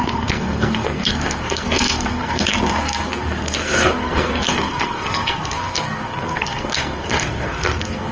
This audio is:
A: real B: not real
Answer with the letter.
B